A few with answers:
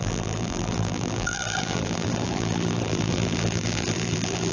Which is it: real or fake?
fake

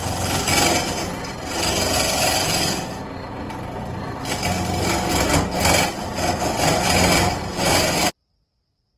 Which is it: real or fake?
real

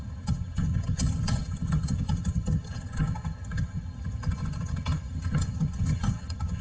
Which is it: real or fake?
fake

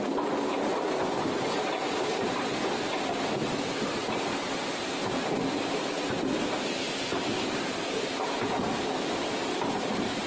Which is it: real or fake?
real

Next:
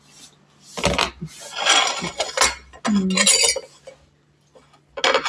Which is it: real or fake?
real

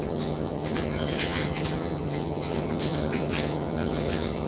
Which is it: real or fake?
fake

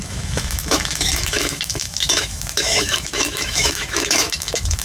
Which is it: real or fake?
fake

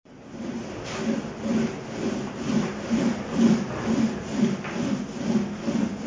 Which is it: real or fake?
real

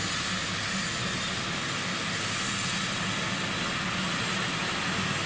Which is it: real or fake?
real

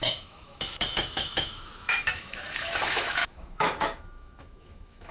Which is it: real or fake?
fake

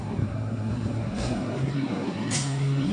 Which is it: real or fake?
fake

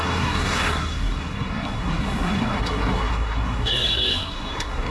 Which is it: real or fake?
fake